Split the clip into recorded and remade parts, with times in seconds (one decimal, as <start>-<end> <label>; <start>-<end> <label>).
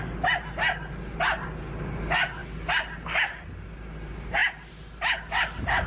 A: 0.0-5.9 recorded